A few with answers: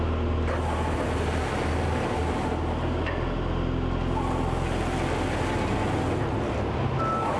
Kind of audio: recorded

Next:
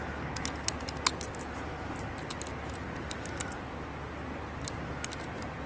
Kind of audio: recorded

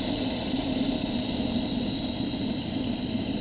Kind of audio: recorded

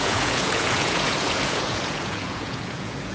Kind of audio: remade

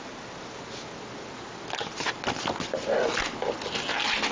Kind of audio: recorded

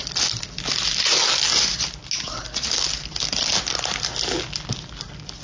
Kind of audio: recorded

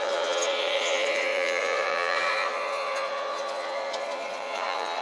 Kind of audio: remade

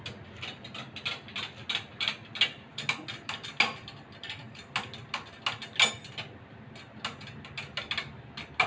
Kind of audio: recorded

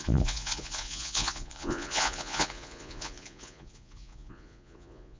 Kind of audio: remade